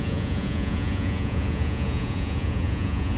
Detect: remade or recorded remade